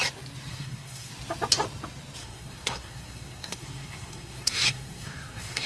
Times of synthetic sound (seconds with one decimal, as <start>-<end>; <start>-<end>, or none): 0.5-1.1; 2.2-5.7